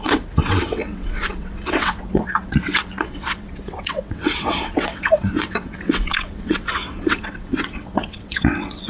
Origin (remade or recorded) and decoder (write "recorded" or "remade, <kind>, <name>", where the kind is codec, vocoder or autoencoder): remade, vocoder, WaveNeXt